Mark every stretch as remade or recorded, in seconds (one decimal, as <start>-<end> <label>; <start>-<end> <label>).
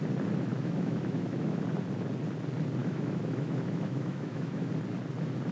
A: 0.0-0.5 recorded; 0.5-1.6 remade; 1.6-2.8 recorded; 2.8-4.7 remade; 4.7-5.5 recorded